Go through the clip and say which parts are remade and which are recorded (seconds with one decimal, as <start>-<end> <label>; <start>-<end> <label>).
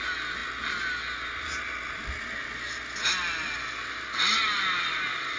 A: 0.0-5.4 recorded